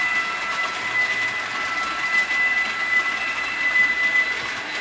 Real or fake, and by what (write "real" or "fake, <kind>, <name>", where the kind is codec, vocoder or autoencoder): real